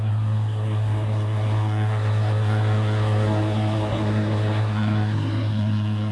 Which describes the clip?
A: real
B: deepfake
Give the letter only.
B